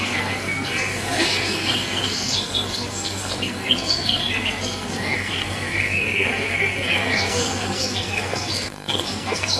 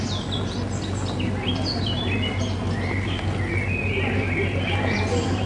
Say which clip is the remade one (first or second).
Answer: first